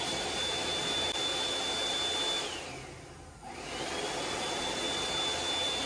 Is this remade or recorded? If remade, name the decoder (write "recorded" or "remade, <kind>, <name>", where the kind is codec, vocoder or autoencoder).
recorded